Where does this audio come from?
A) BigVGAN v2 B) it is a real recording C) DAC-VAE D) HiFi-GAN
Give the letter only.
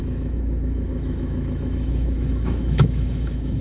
C